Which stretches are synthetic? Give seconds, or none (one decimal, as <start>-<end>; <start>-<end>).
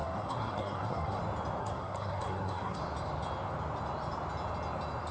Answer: 0.0-1.2; 1.6-2.8